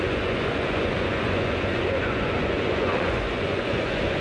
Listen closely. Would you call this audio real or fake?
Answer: fake